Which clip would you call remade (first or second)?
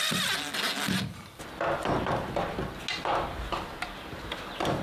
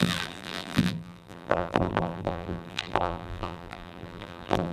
second